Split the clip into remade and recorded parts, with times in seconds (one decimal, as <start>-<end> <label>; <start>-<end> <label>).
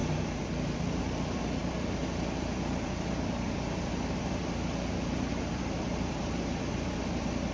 0.0-7.5 remade